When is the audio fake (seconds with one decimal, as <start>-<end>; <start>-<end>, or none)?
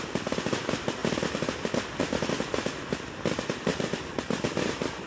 none